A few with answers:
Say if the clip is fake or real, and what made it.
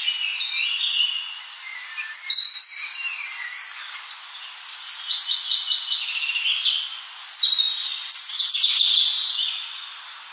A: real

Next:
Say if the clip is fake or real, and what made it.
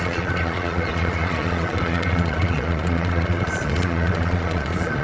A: fake, vocoder, Vocos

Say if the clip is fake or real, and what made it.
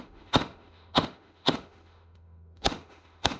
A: fake, autoencoder, DAC-VAE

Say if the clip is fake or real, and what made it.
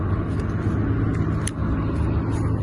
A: real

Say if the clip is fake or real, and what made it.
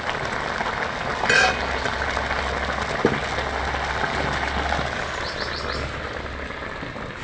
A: real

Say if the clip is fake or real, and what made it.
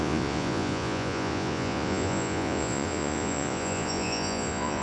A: fake, vocoder, Vocos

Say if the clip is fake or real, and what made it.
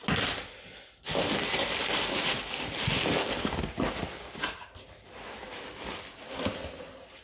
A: real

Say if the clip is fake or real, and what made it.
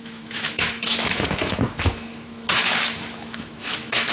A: fake, autoencoder, DAC-VAE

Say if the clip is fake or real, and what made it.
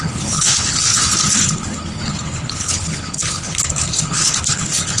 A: fake, codec, HILCodec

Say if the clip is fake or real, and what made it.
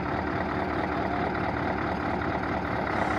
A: real